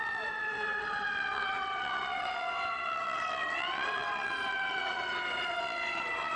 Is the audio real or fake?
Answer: fake